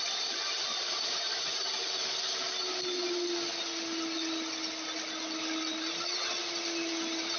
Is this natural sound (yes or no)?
yes